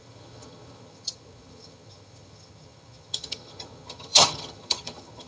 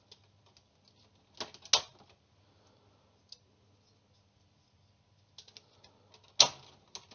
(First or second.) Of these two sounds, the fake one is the first